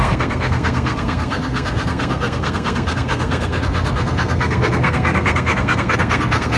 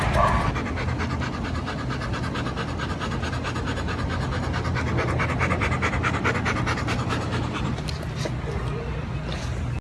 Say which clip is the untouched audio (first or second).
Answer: second